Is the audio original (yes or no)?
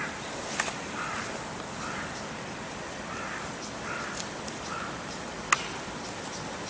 yes